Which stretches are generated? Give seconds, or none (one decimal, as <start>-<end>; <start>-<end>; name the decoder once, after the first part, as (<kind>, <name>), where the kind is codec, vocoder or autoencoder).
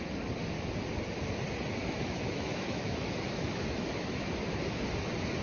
1.8-4.3 (autoencoder, DAC-VAE)